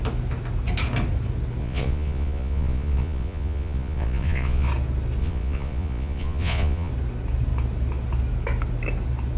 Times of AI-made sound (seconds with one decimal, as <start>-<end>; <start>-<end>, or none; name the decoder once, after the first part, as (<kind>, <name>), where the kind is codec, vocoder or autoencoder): 1.6-4.7 (vocoder, Vocos); 5.2-6.9